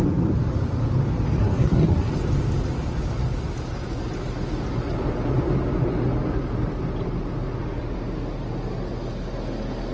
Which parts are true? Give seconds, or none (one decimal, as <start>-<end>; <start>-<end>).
0.0-1.4; 2.1-9.9